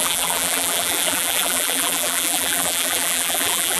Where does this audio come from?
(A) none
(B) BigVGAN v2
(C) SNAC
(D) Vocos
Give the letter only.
B